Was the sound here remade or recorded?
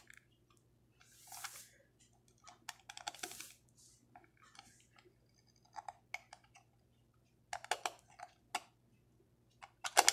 recorded